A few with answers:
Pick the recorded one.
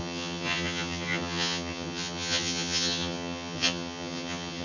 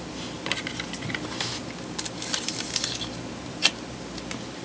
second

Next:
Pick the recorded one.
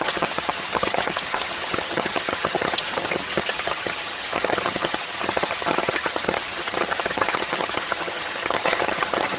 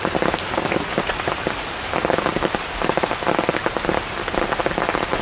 second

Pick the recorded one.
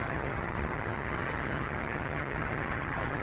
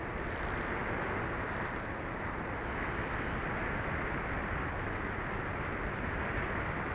second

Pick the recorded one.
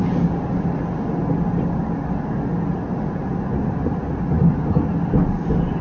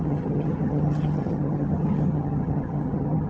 first